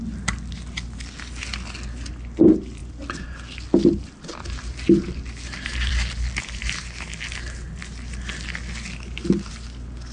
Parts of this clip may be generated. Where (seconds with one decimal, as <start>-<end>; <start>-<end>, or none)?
none